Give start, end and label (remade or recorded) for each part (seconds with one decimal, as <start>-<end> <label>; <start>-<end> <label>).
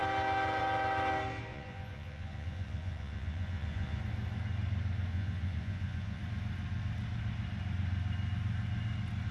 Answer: 0.0-1.5 recorded; 1.5-4.0 remade; 4.0-5.1 recorded; 5.1-6.2 remade; 6.2-9.3 recorded